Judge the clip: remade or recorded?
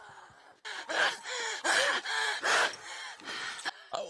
recorded